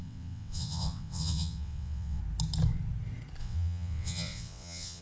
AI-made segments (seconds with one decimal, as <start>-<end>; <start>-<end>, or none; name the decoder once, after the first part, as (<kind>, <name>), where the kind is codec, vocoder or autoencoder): 0.0-2.2 (vocoder, WaveNeXt); 3.4-5.0